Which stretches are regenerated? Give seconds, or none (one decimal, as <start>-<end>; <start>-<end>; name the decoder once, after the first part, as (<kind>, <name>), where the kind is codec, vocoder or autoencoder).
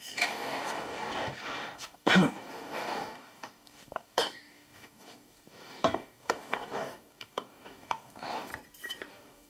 0.0-8.5 (codec, DAC); 9.1-9.5